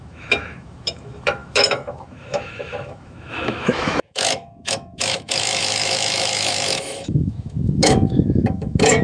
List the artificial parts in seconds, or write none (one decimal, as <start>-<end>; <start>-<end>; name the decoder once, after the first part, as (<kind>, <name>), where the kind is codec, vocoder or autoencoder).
0.0-9.0 (autoencoder, DAC-VAE)